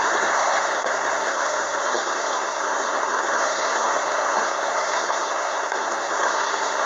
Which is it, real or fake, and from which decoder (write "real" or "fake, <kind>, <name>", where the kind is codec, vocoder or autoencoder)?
fake, codec, SNAC